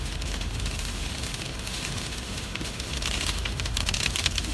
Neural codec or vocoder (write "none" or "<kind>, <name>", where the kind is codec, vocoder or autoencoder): autoencoder, DAC-VAE